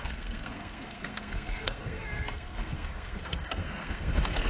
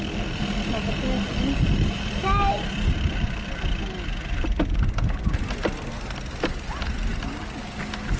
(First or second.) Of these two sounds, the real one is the second